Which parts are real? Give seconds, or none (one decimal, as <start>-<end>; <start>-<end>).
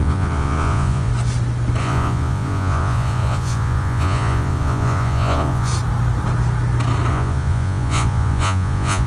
1.1-1.8; 5.7-7.1